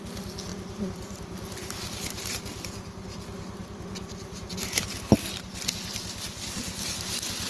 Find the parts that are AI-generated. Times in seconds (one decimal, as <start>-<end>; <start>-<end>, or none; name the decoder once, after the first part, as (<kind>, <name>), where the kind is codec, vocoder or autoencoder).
none